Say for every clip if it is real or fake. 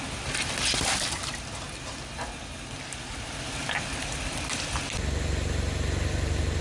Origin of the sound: real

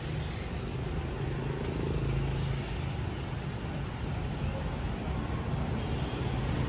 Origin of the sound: real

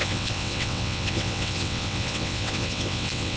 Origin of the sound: fake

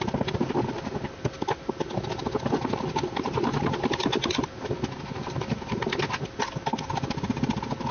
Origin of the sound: real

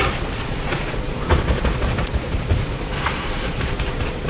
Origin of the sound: fake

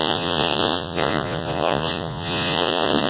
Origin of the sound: fake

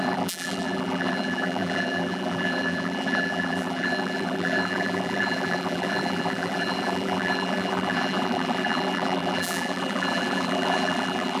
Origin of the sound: fake